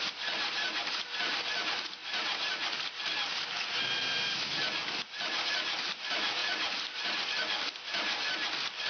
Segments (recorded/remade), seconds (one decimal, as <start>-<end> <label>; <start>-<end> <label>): 0.0-6.4 recorded; 6.4-7.1 remade; 7.1-8.9 recorded